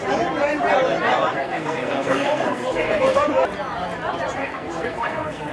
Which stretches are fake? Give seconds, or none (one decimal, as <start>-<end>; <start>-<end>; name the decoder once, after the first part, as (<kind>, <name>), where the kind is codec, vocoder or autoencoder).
1.3-3.2 (codec, SNAC); 4.4-5.5